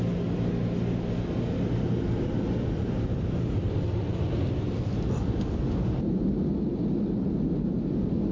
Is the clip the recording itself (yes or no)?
yes